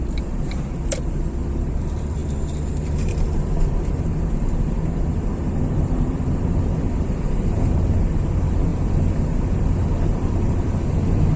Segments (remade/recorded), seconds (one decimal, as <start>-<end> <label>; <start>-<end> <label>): 0.0-11.4 remade